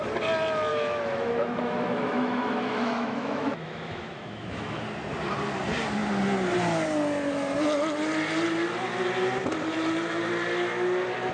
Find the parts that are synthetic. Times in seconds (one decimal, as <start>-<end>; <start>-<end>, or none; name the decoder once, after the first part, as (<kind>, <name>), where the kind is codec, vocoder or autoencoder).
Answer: 0.7-4.8 (autoencoder, DAC-VAE)